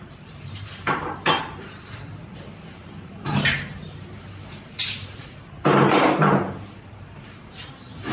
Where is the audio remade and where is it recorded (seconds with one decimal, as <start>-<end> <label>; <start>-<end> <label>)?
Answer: 0.0-4.8 remade; 4.8-7.5 recorded; 7.5-8.1 remade